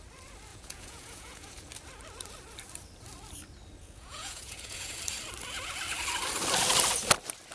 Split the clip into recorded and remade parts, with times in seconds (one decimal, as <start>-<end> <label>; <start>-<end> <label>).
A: 0.0-0.5 recorded; 0.5-1.7 remade; 1.7-3.8 recorded; 3.8-5.0 remade; 5.0-7.5 recorded